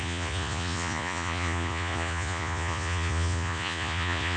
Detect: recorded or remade remade